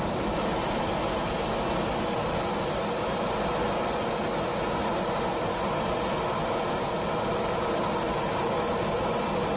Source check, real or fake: real